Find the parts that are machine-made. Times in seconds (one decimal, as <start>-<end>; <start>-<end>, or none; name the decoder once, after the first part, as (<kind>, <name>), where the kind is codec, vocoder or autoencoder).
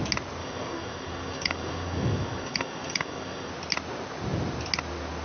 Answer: 0.4-3.5 (codec, DAC)